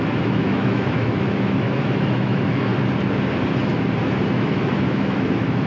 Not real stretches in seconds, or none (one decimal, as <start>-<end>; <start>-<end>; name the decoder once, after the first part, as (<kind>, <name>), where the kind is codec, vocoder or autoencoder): 0.0-2.7 (autoencoder, DAC-VAE); 4.3-5.7